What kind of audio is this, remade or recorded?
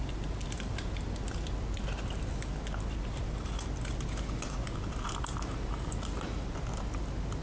recorded